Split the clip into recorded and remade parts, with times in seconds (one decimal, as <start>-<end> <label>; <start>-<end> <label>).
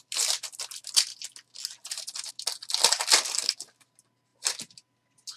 0.0-5.4 recorded